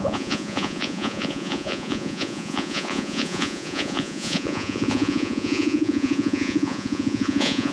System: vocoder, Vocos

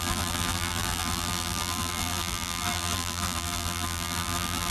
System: vocoder, BigVGAN v2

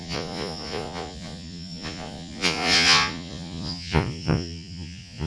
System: vocoder, Vocos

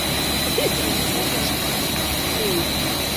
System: none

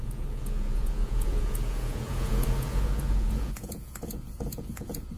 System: vocoder, Vocos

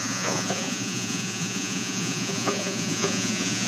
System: vocoder, Vocos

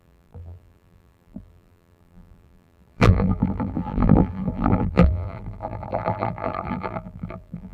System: vocoder, BigVGAN v2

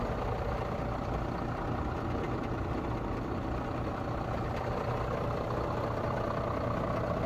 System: none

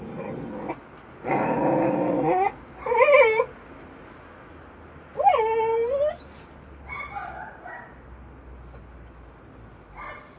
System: none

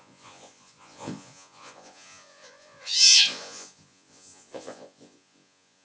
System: vocoder, Vocos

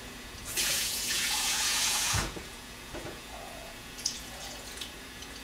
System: vocoder, Vocos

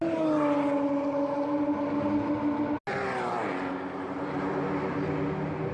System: none